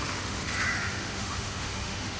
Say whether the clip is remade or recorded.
remade